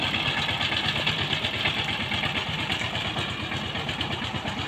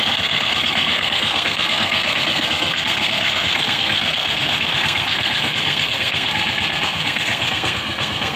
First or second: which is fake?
second